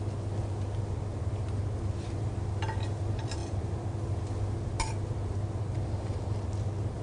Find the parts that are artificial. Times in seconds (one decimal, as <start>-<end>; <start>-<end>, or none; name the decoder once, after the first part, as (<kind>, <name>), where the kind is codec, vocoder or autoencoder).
none